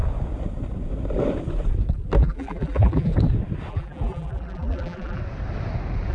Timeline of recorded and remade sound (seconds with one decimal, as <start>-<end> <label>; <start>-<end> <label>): 0.0-2.2 recorded; 2.2-3.1 remade; 3.1-3.7 recorded; 3.7-5.2 remade; 5.2-6.1 recorded